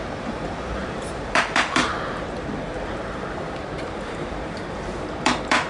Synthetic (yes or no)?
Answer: yes